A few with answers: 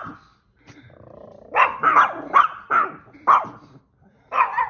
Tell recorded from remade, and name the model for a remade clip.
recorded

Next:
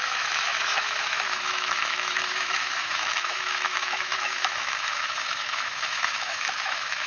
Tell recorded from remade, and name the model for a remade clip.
remade, autoencoder, DAC-VAE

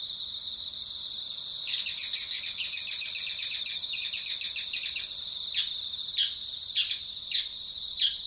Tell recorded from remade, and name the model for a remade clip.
recorded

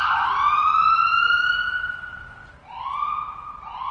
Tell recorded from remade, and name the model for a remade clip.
recorded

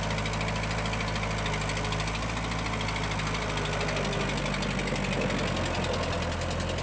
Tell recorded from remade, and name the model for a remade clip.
recorded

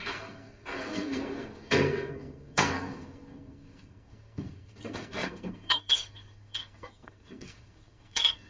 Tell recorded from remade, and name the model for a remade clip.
remade, codec, SNAC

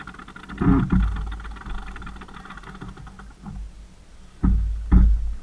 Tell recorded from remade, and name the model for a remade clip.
recorded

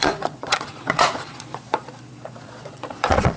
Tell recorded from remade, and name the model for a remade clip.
remade, vocoder, Vocos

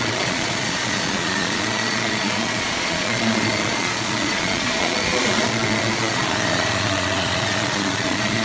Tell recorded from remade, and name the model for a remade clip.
remade, vocoder, Vocos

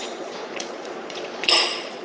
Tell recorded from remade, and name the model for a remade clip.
remade, vocoder, Vocos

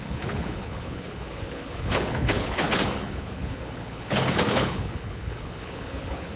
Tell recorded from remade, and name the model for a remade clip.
remade, codec, HILCodec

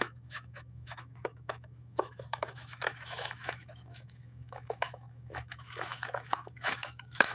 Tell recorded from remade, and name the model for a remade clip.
remade, autoencoder, DAC-VAE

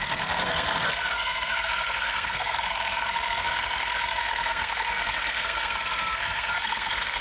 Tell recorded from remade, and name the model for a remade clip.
remade, codec, SNAC